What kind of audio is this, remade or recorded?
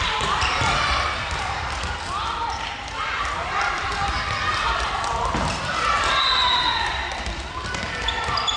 remade